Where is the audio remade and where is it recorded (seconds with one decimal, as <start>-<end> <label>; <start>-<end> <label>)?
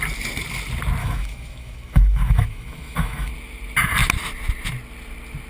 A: 0.0-1.0 recorded; 1.0-3.3 remade; 3.3-5.5 recorded